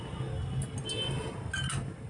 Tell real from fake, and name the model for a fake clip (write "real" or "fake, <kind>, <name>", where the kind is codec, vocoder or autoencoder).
real